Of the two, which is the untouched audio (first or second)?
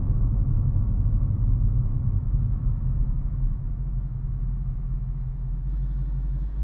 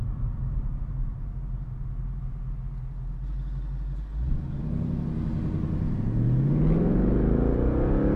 second